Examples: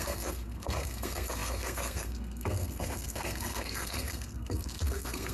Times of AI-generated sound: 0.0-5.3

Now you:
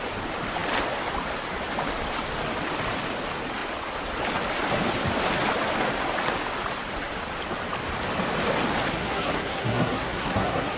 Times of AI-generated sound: 8.9-10.8

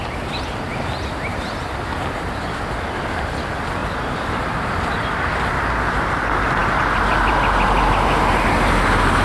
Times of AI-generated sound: none